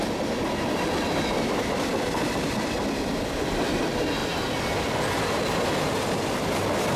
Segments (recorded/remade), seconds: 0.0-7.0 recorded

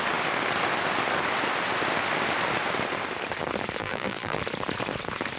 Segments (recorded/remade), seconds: 0.0-3.8 recorded; 3.8-4.4 remade; 4.4-5.4 recorded

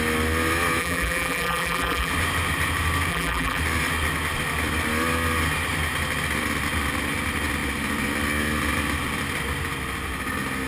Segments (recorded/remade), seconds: 0.0-0.8 recorded; 0.8-2.1 remade; 2.1-3.1 recorded; 3.1-3.6 remade; 3.6-10.7 recorded